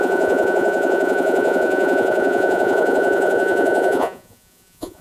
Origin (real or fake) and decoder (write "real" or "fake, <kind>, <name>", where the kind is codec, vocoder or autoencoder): fake, vocoder, Vocos